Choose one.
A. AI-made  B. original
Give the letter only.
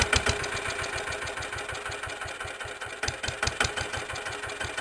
B